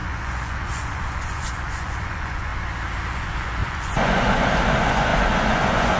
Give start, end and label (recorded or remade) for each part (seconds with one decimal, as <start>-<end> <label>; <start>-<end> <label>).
0.0-2.5 remade; 2.5-3.1 recorded; 3.1-6.0 remade